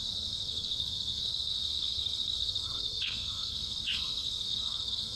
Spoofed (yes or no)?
yes